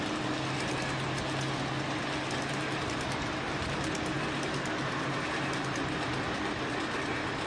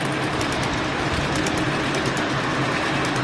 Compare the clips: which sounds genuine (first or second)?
first